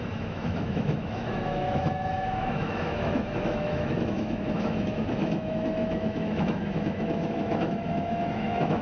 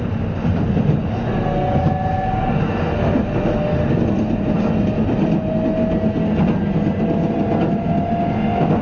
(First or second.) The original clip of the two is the second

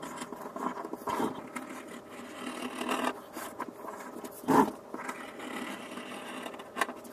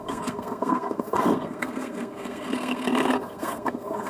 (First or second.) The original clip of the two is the first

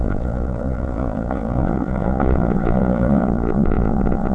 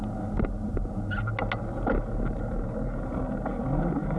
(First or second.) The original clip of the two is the second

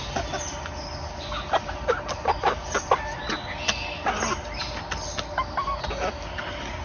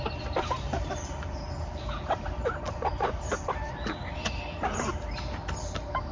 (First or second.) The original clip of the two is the first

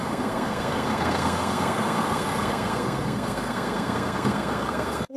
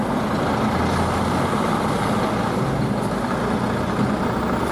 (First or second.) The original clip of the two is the second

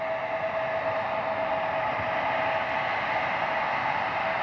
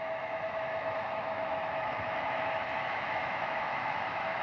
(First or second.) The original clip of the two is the first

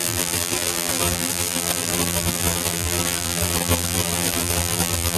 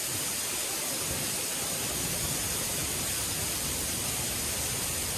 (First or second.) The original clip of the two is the second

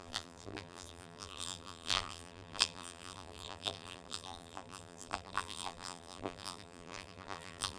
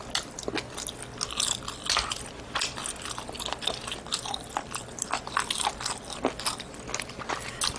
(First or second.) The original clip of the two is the second